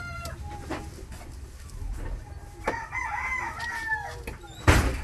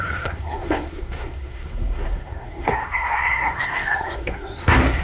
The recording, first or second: first